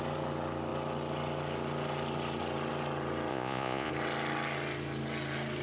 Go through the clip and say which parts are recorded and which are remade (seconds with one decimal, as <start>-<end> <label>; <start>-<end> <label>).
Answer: 0.0-3.3 recorded; 3.3-3.9 remade; 3.9-5.6 recorded